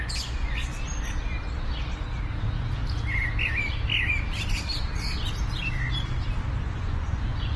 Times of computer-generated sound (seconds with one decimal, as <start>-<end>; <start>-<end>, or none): 0.0-0.7; 2.3-2.8; 6.6-7.6